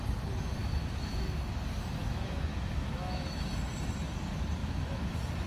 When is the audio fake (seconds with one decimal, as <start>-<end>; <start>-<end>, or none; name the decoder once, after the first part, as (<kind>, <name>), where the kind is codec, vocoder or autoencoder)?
0.6-1.5 (autoencoder, DAC-VAE); 2.0-3.5; 4.6-5.1